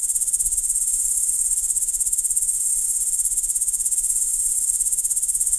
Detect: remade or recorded remade